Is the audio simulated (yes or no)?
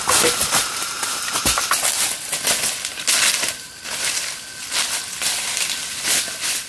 no